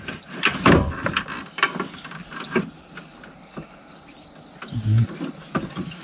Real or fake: fake